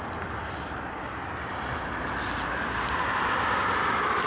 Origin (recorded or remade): remade